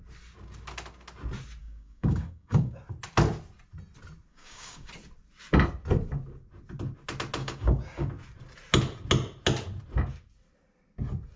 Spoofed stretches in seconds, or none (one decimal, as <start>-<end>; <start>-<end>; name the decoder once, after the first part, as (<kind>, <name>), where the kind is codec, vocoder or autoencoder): 1.6-2.8 (codec, DAC); 4.3-4.9; 7.4-8.1